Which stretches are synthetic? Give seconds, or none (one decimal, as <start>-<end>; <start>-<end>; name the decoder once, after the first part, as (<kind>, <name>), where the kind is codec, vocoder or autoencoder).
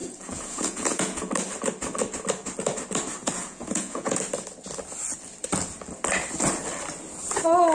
0.0-1.3 (vocoder, Vocos); 3.2-4.2